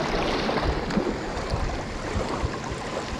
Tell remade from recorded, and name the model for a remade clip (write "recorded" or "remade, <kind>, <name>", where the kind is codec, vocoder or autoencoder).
recorded